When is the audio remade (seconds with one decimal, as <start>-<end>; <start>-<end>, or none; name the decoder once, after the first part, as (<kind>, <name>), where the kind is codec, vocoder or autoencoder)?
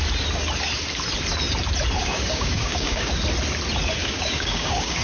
2.0-3.1 (codec, DAC); 4.0-5.0